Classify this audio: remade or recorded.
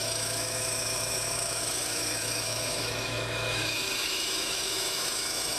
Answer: remade